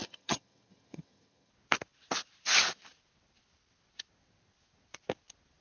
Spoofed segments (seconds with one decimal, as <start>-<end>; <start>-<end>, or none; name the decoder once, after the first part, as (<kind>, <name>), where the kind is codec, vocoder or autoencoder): 0.0-1.5 (vocoder, HiFi-GAN)